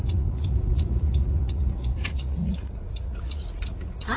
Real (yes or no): no